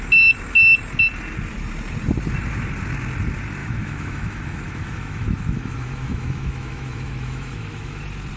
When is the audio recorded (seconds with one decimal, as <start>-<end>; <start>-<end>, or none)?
0.0-3.6; 8.0-8.4